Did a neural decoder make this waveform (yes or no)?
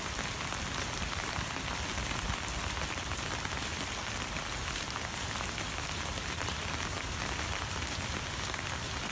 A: no